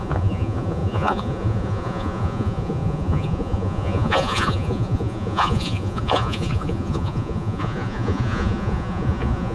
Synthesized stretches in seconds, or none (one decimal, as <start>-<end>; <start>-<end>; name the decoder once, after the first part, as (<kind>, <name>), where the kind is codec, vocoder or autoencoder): 0.0-9.5 (vocoder, Vocos)